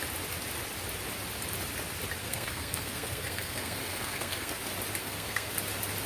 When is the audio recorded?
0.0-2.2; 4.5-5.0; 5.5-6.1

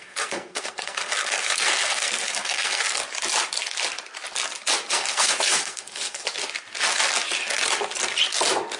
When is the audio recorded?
3.0-4.9; 6.2-8.8

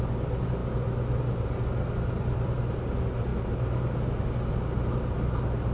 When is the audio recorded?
0.0-5.7

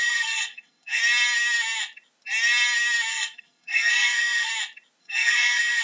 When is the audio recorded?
1.0-3.1; 4.5-5.0

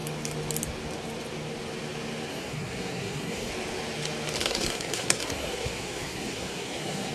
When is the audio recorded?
0.0-2.3; 3.5-4.4

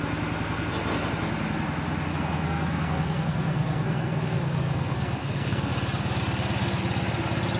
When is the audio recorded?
0.0-2.1; 5.7-7.6